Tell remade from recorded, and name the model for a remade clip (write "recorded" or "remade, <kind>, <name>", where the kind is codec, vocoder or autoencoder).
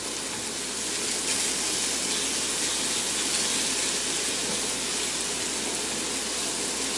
recorded